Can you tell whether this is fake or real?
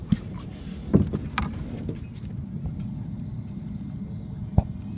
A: real